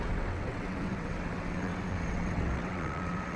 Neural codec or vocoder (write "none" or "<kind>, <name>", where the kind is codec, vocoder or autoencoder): vocoder, WaveNeXt